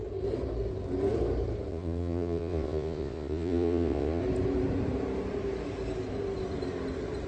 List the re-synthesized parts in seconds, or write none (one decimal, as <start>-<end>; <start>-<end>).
1.7-4.2